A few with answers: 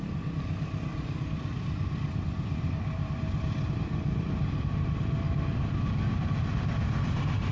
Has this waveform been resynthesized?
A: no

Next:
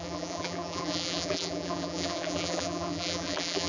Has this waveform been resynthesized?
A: yes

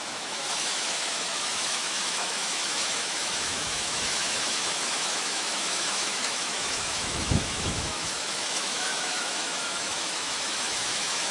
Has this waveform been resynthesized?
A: yes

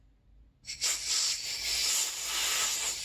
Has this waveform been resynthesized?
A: no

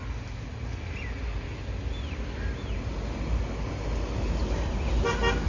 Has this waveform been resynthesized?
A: no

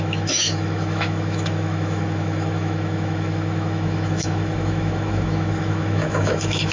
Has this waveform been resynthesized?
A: yes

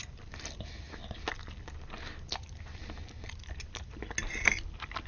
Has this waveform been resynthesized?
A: no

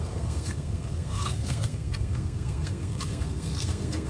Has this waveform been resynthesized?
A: yes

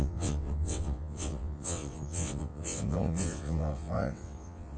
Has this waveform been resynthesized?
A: yes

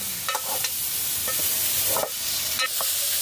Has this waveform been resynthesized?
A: no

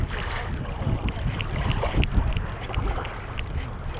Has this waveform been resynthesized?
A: yes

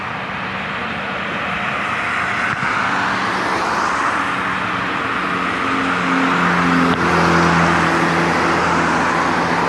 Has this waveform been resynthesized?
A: no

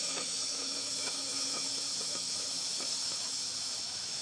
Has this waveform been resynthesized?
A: yes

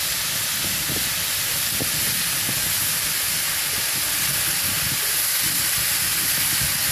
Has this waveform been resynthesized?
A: no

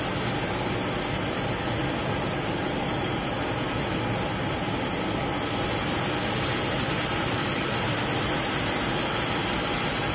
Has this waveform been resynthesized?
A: no